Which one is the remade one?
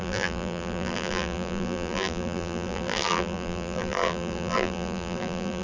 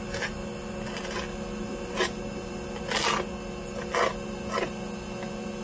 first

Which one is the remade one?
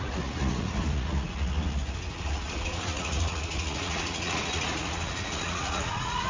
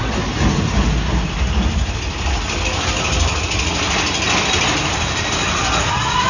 first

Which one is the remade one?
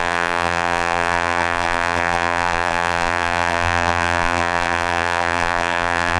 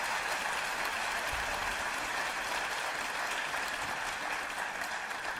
first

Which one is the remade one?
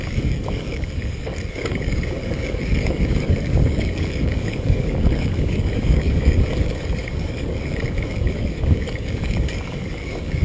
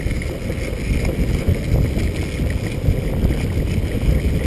first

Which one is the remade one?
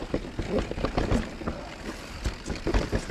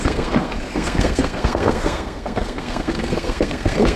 second